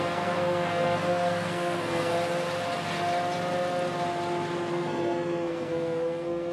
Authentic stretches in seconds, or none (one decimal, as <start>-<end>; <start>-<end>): 2.1-4.7